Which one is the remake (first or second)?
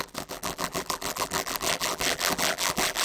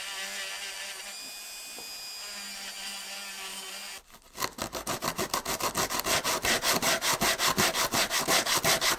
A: first